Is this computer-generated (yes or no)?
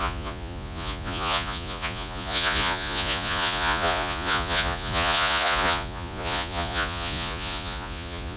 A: yes